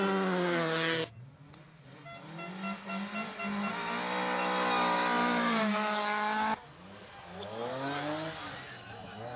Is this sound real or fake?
real